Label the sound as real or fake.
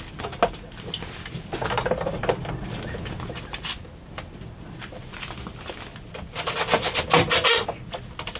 real